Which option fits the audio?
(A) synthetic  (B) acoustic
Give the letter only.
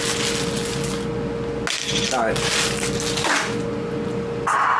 B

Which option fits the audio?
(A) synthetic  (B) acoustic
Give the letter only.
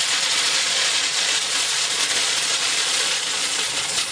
A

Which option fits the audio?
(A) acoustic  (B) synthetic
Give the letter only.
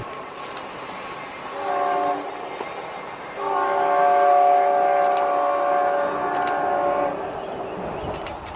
A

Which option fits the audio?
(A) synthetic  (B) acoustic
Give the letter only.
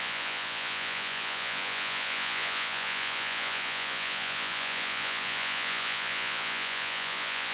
A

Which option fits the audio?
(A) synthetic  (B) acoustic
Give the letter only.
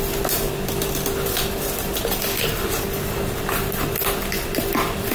B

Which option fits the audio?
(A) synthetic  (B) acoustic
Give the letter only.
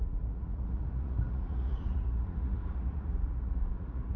A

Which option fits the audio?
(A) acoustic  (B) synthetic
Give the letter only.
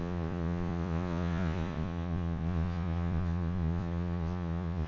B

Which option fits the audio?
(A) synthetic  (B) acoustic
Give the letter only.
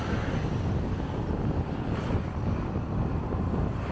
B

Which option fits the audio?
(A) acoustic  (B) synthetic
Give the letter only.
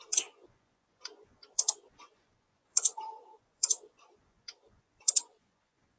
B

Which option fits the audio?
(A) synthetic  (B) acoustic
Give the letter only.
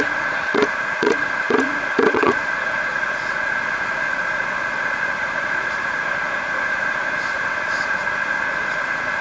A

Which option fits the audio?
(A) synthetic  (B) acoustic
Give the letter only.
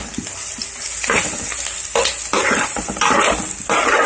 B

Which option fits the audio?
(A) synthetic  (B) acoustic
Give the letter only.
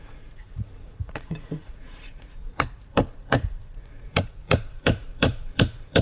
A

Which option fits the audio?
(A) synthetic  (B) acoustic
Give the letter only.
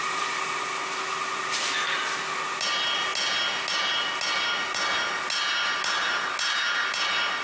B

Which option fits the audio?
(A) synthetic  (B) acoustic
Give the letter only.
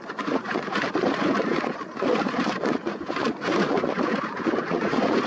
A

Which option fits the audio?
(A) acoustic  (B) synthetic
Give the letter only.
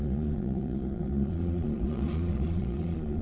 B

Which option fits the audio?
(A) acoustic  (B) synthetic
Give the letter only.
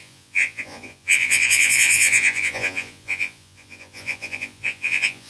B